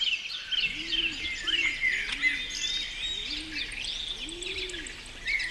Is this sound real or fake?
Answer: real